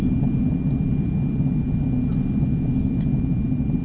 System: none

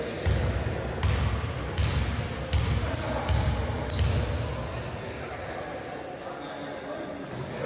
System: none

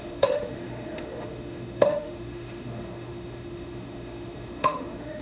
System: autoencoder, DAC-VAE